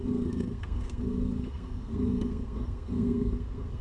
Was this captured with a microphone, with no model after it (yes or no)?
no